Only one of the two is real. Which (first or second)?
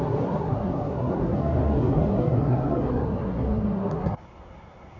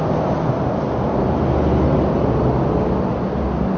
second